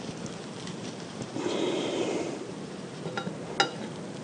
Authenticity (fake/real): real